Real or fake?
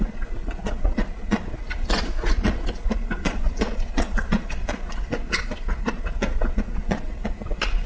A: fake